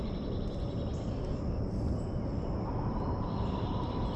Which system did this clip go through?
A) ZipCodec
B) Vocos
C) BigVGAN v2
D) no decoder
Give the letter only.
D